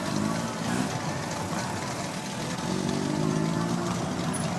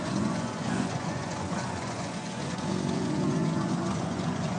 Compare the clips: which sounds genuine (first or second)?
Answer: first